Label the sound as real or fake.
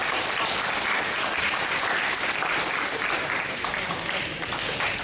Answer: real